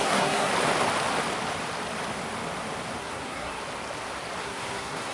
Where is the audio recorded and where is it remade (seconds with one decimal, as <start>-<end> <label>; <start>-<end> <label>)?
0.0-0.5 remade; 0.5-3.0 recorded; 3.0-3.6 remade; 3.6-4.4 recorded; 4.4-5.1 remade